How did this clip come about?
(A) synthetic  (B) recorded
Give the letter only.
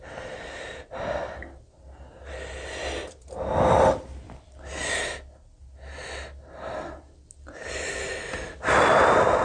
B